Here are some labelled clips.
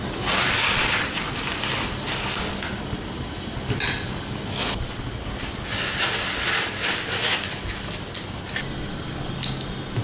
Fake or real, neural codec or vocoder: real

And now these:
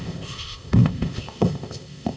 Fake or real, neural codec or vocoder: fake, codec, ZipCodec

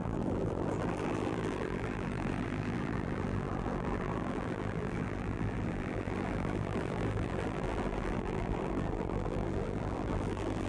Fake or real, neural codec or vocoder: fake, vocoder, BigVGAN v2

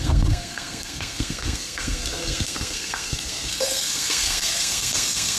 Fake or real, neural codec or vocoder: fake, codec, SNAC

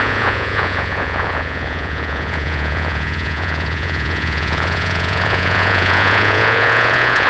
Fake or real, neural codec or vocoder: fake, vocoder, Vocos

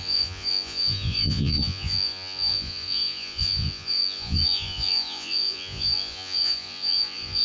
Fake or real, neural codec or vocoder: fake, vocoder, Vocos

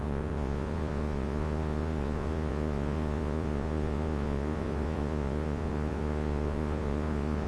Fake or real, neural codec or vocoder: fake, vocoder, Vocos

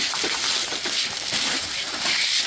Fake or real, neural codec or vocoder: real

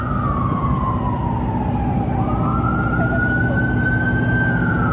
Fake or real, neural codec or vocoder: real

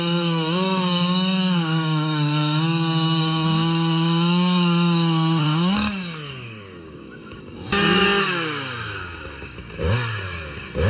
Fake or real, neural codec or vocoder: fake, codec, DAC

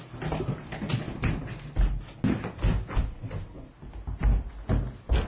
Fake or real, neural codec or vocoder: real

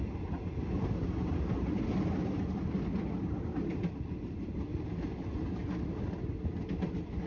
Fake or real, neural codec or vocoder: real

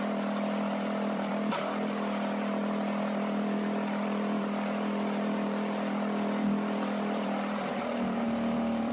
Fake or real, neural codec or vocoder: fake, vocoder, BigVGAN v2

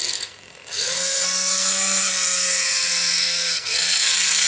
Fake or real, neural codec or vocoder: fake, codec, SNAC